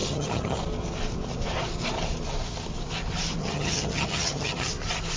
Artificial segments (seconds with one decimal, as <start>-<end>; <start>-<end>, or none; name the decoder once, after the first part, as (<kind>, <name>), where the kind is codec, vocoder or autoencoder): 0.0-0.6 (vocoder, HiFi-GAN); 3.4-4.7